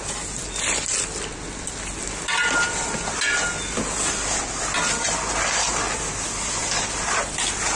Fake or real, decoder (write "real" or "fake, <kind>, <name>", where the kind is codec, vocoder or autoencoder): real